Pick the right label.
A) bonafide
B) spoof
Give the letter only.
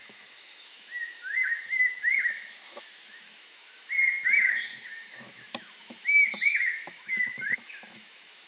B